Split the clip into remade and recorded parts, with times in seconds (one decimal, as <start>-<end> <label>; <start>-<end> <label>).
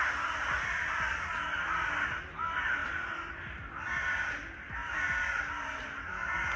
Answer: 0.0-6.6 recorded